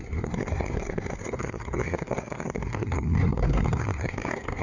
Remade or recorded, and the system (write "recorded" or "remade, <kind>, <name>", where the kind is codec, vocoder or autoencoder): remade, codec, SNAC